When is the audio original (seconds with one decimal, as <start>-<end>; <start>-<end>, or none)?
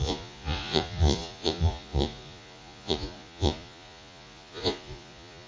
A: none